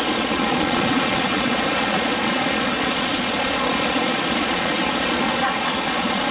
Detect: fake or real fake